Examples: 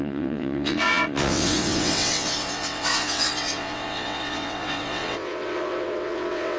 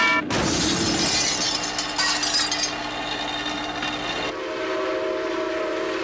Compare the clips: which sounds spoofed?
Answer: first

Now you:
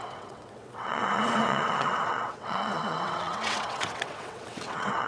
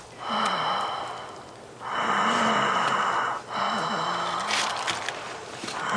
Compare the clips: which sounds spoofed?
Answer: first